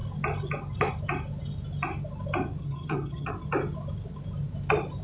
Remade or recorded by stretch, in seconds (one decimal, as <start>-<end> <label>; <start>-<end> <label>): 0.0-2.6 recorded; 2.6-3.3 remade; 3.3-5.0 recorded